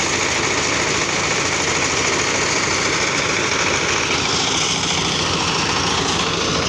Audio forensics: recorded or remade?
recorded